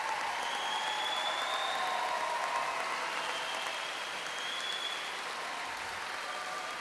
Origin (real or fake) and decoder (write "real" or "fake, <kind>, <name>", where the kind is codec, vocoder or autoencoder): real